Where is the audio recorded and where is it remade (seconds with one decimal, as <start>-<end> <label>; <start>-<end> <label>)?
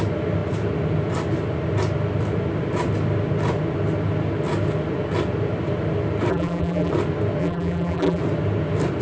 0.0-6.3 recorded; 6.3-6.9 remade; 6.9-7.4 recorded; 7.4-8.2 remade; 8.2-9.0 recorded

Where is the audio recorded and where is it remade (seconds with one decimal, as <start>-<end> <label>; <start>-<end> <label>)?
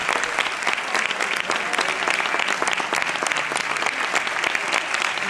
0.0-5.3 recorded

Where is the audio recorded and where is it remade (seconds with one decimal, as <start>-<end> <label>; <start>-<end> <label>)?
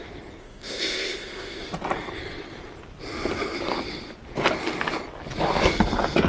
0.0-0.4 recorded; 0.4-1.6 remade; 1.6-6.3 recorded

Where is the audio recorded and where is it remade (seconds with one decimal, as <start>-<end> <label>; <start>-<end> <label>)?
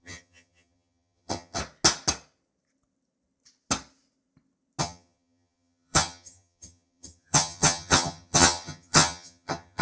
0.0-1.6 remade; 1.6-4.8 recorded; 4.8-9.8 remade